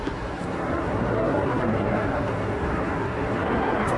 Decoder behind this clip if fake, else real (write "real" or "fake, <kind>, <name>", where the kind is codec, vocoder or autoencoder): fake, codec, SNAC